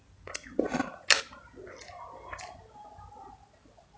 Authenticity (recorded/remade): recorded